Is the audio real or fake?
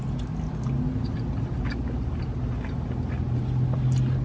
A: real